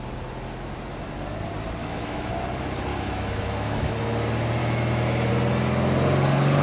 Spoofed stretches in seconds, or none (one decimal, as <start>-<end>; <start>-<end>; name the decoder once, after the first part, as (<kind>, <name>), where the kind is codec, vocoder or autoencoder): 1.8-2.3 (autoencoder, DAC-VAE); 2.9-3.9; 4.6-5.3

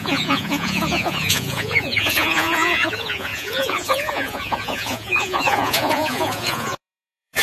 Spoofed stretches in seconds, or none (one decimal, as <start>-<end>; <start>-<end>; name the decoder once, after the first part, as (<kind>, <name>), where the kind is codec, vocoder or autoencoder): 0.0-7.4 (vocoder, Vocos)

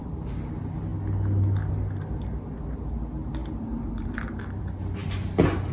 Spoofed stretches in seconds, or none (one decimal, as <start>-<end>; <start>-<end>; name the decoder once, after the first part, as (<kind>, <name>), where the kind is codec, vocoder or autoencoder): none

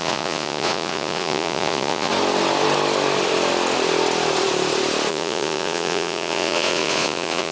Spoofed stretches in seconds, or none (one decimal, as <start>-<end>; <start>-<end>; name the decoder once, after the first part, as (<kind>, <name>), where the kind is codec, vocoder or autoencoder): 0.0-2.1 (vocoder, Vocos); 5.1-7.5

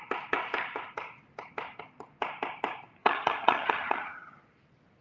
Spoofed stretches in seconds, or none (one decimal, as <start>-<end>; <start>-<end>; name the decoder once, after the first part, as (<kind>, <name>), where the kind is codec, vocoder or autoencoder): 3.0-4.3 (vocoder, HiFi-GAN)

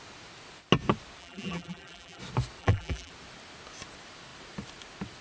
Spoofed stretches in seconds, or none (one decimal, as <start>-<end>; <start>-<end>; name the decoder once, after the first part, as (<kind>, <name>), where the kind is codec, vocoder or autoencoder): 1.2-2.2 (vocoder, BigVGAN v2); 2.6-3.1

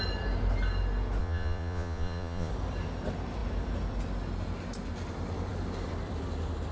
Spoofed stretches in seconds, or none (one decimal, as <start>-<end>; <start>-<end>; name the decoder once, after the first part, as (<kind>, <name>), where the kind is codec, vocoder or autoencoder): 1.2-2.5 (vocoder, Vocos)

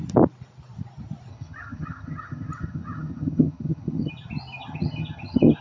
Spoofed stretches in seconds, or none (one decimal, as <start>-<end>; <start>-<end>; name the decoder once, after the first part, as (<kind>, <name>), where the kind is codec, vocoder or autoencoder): 1.3-4.1 (vocoder, HiFi-GAN); 4.6-5.6